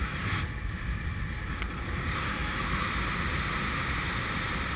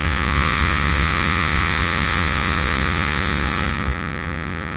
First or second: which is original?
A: first